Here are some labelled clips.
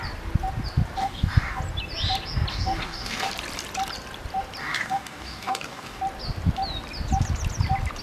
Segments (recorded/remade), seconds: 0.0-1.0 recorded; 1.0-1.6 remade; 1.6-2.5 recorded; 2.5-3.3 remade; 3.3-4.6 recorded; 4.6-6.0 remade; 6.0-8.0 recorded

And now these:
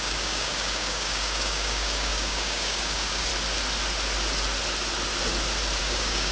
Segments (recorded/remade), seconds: 0.0-3.3 remade; 3.3-5.8 recorded; 5.8-6.3 remade

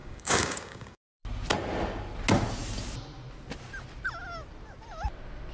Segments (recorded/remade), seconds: 0.0-1.2 remade; 1.2-5.5 recorded

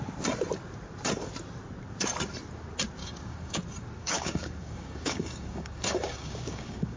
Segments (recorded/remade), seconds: 0.0-3.0 recorded; 3.0-3.6 remade; 3.6-4.0 recorded; 4.0-7.0 remade

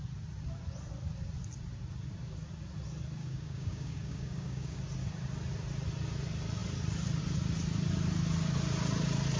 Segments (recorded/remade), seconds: 0.0-3.2 recorded; 3.2-4.8 remade; 4.8-9.4 recorded